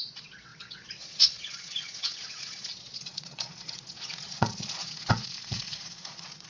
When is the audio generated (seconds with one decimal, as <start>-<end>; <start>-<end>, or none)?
0.0-6.5